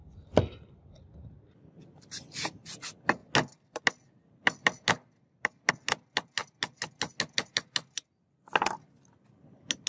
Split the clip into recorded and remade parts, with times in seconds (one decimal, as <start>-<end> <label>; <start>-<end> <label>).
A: 0.0-9.9 recorded